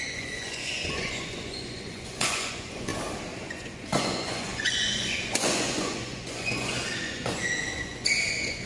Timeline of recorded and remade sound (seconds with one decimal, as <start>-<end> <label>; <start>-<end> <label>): 0.0-2.9 remade; 2.9-3.4 recorded; 3.4-8.7 remade